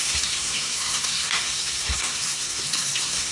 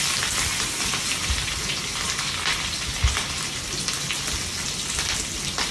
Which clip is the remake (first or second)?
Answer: first